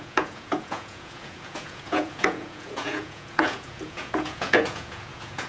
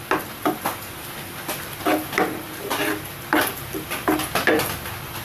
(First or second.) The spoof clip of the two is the first